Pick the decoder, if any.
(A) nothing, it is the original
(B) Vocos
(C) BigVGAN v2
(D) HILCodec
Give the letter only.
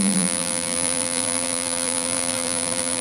C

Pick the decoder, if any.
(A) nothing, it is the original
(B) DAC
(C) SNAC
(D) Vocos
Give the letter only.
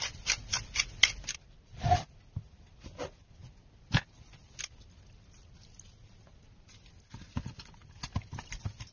A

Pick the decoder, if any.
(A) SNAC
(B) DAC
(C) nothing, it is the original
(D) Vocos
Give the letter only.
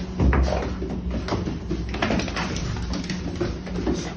C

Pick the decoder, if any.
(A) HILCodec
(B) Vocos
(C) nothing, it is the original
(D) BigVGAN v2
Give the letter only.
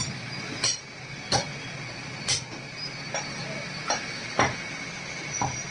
C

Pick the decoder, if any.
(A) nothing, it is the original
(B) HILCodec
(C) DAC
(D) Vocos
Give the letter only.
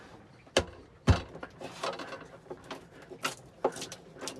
A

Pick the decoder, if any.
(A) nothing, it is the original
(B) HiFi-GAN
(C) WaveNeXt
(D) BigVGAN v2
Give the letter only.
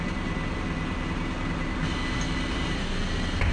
A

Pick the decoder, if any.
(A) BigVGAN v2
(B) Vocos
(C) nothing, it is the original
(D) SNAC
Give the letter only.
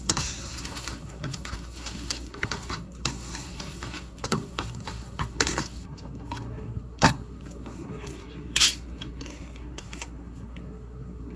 D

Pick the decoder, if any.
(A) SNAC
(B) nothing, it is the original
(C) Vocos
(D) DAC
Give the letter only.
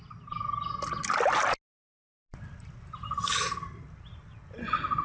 B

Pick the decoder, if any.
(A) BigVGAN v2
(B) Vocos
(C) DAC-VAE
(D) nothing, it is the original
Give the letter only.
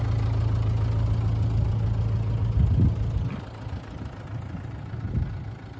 D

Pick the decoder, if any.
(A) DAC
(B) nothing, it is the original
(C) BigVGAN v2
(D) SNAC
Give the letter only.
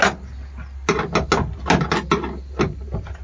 B